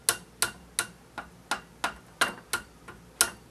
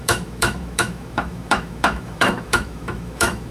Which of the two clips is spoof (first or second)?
second